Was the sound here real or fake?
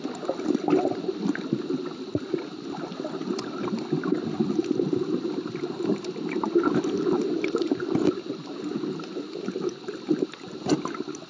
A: real